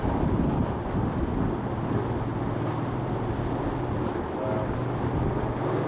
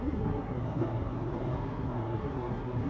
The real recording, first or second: first